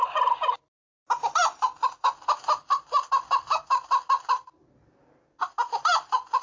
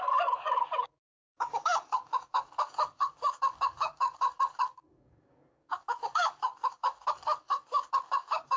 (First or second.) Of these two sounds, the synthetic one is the second